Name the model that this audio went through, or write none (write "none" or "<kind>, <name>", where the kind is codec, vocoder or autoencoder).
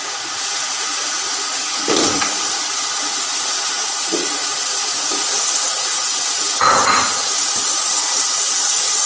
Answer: vocoder, Vocos